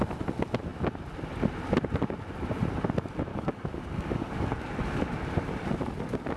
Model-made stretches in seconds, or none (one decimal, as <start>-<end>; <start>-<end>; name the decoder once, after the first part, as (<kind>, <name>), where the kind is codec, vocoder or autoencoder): 3.3-5.0 (codec, DAC)